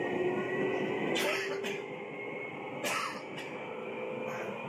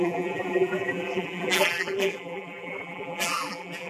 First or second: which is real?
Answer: first